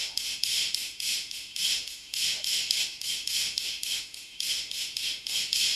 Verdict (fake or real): fake